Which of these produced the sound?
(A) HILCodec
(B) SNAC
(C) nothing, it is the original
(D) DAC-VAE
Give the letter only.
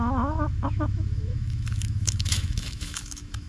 D